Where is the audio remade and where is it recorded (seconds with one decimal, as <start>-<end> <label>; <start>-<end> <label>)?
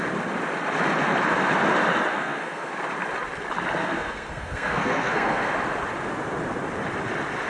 0.0-2.1 recorded; 2.1-2.7 remade; 2.7-3.8 recorded; 3.8-5.5 remade; 5.5-7.5 recorded